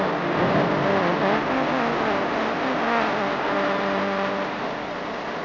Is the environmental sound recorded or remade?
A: recorded